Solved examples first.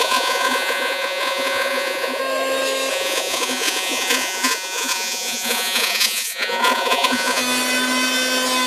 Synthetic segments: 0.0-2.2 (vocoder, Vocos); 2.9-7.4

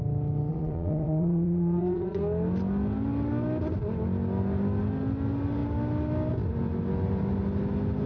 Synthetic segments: 0.5-2.2 (vocoder, Vocos)

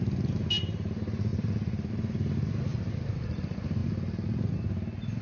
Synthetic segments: 1.3-1.9 (vocoder, BigVGAN v2); 2.7-3.4